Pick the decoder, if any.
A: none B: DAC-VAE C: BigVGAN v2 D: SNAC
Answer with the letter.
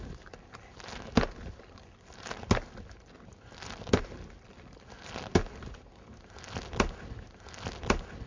A